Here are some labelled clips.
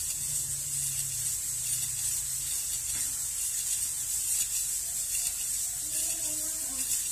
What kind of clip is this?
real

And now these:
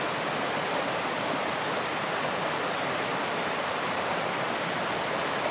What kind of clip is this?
real